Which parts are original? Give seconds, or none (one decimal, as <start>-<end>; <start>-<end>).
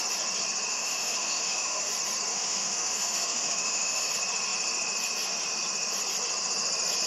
0.0-0.7; 1.9-2.3; 4.1-7.1